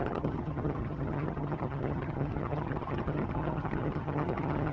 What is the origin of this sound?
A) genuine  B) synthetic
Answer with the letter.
B